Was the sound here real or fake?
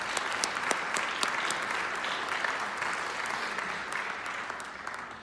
real